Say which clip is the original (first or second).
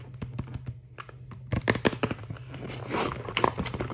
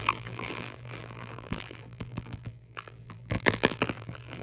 first